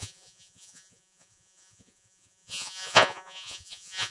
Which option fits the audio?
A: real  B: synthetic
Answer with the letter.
B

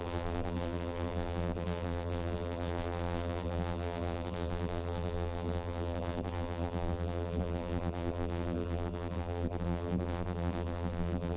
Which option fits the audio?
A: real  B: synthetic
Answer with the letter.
B